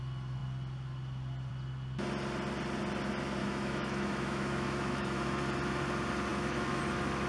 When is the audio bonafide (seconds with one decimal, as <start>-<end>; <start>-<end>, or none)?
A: 0.0-3.4; 5.4-6.3; 6.8-7.3